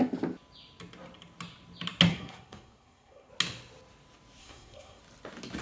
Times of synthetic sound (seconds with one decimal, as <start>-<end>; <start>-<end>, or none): 2.1-3.3; 4.4-5.0